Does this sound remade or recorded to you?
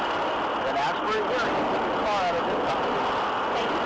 recorded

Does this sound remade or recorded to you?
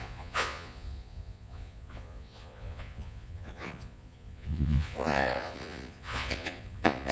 remade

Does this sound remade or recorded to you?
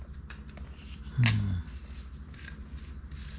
recorded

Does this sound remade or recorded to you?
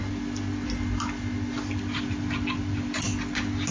recorded